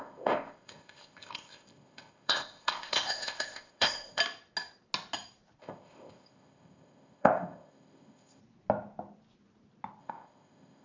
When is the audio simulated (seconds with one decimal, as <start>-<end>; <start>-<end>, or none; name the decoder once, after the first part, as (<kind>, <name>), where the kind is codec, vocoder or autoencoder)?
0.0-4.2 (codec, ZipCodec); 5.6-8.4; 10.0-10.8

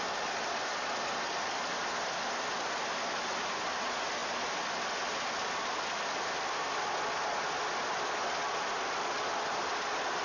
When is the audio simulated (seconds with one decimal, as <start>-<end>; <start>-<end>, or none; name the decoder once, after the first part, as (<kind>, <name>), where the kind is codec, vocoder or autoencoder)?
none

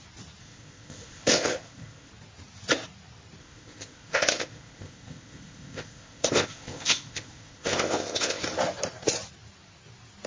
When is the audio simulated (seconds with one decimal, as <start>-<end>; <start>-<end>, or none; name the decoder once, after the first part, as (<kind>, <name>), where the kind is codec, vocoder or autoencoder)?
0.4-2.1 (codec, ZipCodec); 3.4-8.4

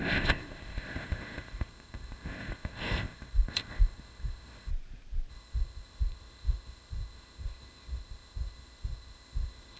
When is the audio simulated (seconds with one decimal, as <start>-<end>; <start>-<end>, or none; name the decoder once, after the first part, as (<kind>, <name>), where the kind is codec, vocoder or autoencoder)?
0.0-4.7 (codec, ZipCodec); 5.3-9.8

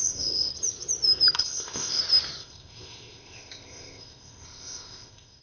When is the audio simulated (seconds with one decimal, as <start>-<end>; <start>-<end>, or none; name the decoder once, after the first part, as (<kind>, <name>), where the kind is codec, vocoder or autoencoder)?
0.0-0.5 (codec, ZipCodec); 1.4-2.0; 2.4-5.4